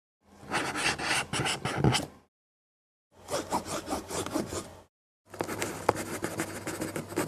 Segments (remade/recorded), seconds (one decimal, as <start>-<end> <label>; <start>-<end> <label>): 0.0-7.3 recorded